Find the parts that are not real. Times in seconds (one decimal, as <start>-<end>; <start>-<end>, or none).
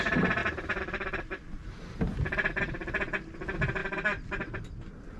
0.4-2.0